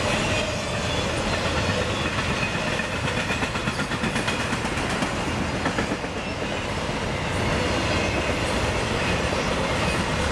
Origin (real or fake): real